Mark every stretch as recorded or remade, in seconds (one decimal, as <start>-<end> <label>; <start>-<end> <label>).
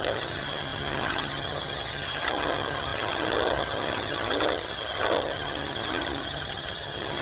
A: 0.0-7.2 remade